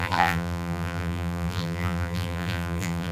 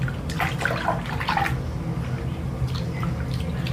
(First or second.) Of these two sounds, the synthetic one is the first